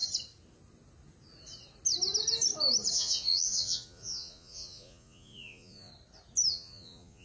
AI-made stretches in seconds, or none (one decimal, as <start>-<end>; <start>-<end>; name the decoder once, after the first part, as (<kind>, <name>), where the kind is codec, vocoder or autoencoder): 2.9-5.9 (vocoder, Vocos); 6.5-7.2